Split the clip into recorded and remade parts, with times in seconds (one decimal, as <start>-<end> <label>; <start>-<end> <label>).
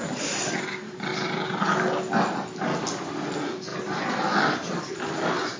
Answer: 0.0-5.6 recorded